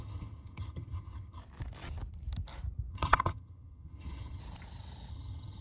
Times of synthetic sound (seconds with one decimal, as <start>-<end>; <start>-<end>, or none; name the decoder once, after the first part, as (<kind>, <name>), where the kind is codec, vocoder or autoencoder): 0.0-1.4 (vocoder, HiFi-GAN); 2.9-4.4; 5.1-5.6